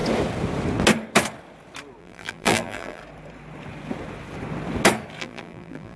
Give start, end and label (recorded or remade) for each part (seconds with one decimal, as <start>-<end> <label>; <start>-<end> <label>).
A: 0.0-2.0 recorded; 2.0-3.0 remade; 3.0-5.2 recorded; 5.2-6.0 remade